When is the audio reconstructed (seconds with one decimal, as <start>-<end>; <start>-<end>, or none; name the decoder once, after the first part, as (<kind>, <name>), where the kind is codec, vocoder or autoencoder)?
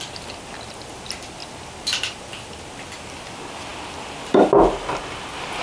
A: none